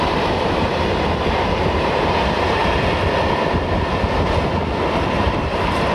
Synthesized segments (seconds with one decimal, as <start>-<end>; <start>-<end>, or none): 0.0-2.6; 5.2-5.9